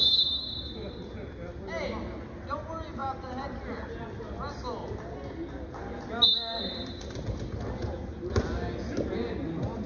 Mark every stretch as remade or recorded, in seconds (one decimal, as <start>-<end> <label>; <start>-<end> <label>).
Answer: 0.0-9.9 recorded